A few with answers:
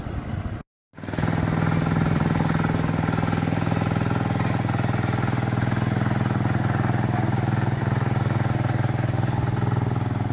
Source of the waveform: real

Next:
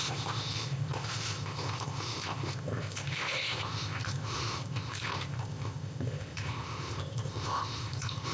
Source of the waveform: fake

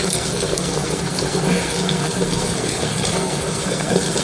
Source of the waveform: fake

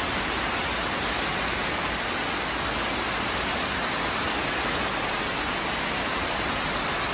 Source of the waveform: real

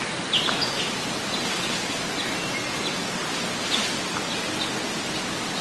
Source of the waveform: real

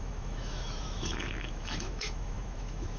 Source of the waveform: fake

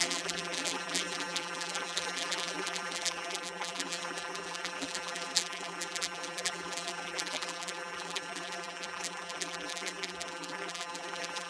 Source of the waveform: fake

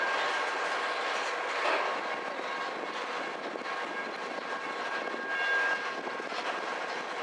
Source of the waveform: real